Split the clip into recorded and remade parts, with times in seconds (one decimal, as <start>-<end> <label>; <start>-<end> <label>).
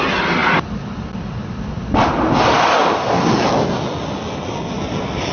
0.0-0.4 recorded; 0.4-2.1 remade; 2.1-2.8 recorded; 2.8-3.8 remade; 3.8-5.3 recorded